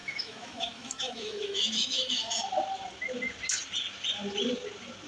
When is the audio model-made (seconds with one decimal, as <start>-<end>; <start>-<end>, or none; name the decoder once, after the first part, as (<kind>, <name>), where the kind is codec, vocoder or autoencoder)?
0.0-2.4 (autoencoder, DAC-VAE)